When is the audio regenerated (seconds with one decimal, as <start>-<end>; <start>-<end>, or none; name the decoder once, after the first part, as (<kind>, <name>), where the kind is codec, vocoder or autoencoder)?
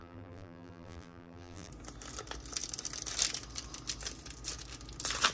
0.0-1.7 (vocoder, BigVGAN v2)